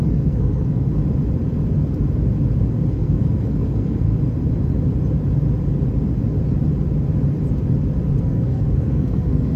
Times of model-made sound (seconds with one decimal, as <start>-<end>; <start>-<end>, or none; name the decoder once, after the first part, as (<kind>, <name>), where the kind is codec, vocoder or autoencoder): 0.0-1.0 (codec, SNAC); 2.9-4.1; 8.2-9.6